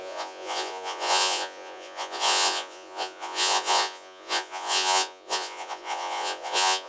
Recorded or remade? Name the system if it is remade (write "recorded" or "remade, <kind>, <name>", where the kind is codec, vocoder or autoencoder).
remade, vocoder, Vocos